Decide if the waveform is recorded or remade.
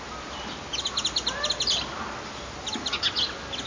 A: recorded